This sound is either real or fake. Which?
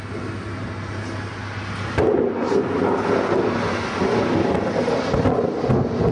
real